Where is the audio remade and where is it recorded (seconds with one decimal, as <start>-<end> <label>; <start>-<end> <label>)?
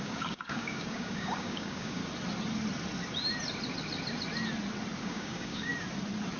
0.0-2.0 remade; 2.0-5.0 recorded; 5.0-5.7 remade; 5.7-6.4 recorded